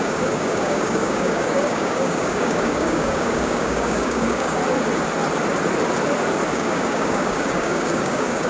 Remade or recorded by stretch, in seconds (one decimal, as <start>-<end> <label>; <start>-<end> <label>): 0.0-4.6 remade; 4.6-6.5 recorded; 6.5-8.5 remade